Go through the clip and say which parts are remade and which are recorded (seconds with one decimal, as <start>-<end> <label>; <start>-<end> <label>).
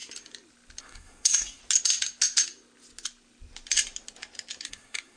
0.0-0.8 recorded; 0.8-1.6 remade; 1.6-4.7 recorded; 4.7-5.2 remade